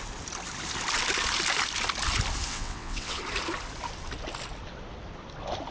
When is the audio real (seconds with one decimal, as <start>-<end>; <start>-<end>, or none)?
0.0-2.5; 3.2-5.7